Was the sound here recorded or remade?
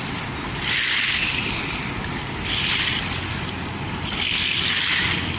recorded